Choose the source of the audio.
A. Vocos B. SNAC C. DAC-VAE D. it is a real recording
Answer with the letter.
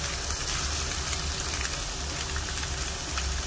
D